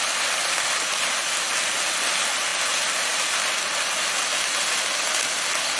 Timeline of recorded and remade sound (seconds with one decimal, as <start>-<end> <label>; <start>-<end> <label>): 0.0-5.8 recorded